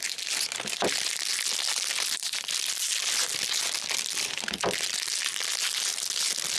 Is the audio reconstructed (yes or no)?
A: no